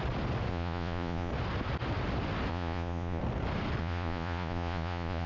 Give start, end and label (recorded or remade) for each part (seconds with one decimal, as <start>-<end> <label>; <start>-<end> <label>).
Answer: 0.0-0.5 recorded; 0.5-1.3 remade; 1.3-2.5 recorded; 2.5-3.2 remade; 3.2-3.8 recorded; 3.8-5.3 remade